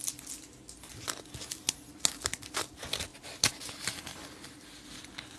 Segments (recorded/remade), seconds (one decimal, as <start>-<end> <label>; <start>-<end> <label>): 0.0-5.4 recorded